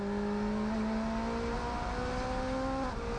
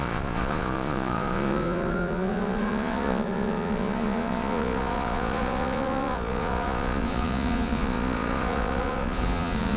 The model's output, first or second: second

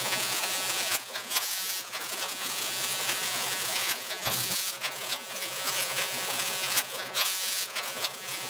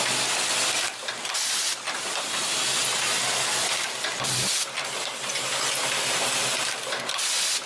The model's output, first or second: first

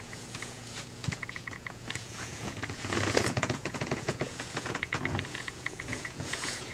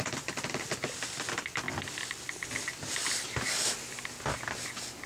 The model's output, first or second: first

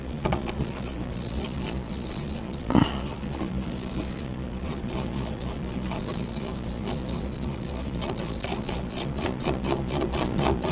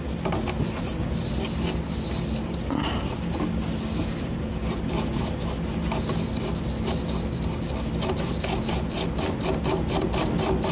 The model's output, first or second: first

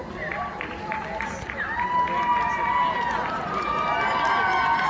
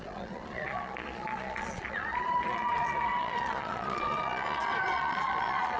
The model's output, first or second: second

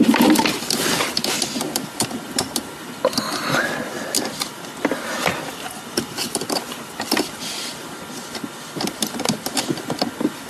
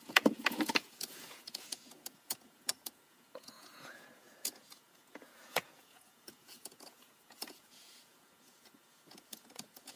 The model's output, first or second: second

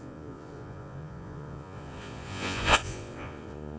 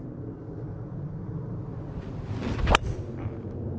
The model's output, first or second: first